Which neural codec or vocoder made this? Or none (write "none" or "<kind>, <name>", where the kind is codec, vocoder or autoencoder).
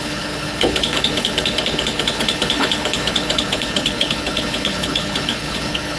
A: codec, HILCodec